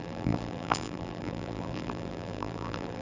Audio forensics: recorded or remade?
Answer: remade